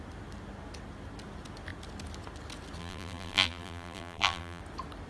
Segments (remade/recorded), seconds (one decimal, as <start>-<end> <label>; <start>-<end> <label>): 0.0-2.8 recorded; 2.8-4.6 remade; 4.6-5.1 recorded